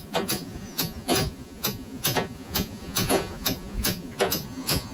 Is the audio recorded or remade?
remade